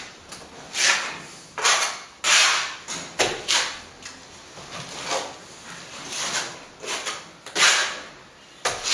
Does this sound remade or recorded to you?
recorded